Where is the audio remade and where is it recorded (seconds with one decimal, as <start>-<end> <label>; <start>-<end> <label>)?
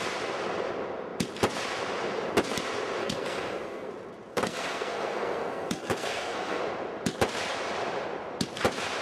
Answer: 0.0-3.0 recorded; 3.0-3.9 remade; 3.9-4.3 recorded; 4.3-6.6 remade; 6.6-9.0 recorded